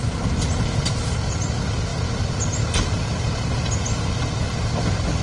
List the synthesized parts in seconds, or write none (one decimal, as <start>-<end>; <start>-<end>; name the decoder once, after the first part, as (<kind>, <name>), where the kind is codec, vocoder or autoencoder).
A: none

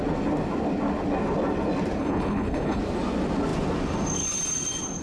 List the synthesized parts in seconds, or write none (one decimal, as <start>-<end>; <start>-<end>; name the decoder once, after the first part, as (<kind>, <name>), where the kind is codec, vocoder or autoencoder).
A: 2.0-2.8 (codec, HILCodec)